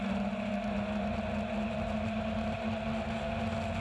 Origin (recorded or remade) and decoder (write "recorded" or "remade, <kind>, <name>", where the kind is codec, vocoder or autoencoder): recorded